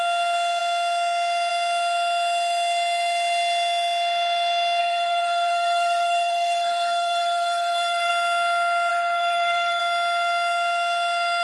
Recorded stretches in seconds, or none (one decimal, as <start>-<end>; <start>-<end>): 0.0-4.8; 8.1-8.9; 9.8-11.4